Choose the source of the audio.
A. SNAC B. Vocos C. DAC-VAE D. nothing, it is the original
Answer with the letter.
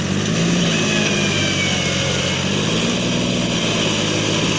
D